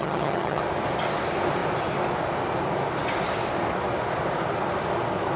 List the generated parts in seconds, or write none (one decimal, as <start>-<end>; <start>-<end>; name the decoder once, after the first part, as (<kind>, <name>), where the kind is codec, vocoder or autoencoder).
0.0-0.6 (vocoder, HiFi-GAN)